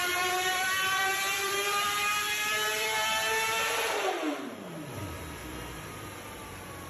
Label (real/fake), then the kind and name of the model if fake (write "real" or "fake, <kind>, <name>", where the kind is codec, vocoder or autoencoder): fake, vocoder, BigVGAN v2